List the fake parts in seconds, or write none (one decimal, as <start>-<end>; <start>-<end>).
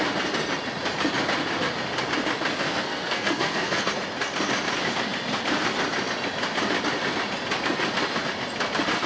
2.6-3.9